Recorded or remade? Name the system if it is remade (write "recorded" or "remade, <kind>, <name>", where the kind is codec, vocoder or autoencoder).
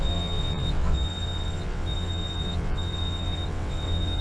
remade, vocoder, WaveNeXt